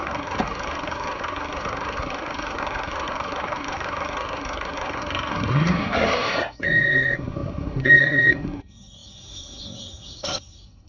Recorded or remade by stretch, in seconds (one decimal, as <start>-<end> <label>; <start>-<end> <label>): 0.0-10.9 remade